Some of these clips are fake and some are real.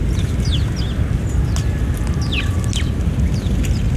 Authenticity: real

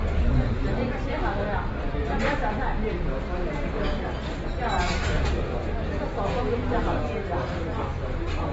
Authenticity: real